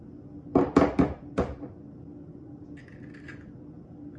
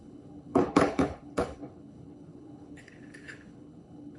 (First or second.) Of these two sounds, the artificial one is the second